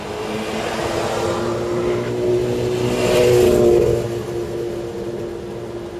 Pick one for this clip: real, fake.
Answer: real